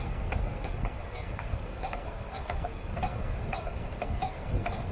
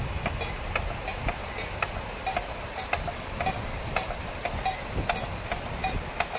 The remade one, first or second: first